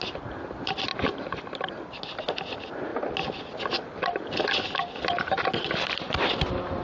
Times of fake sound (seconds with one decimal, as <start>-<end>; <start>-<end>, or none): none